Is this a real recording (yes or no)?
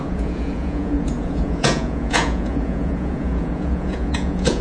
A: no